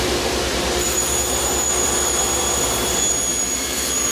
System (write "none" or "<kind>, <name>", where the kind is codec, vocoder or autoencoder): vocoder, BigVGAN v2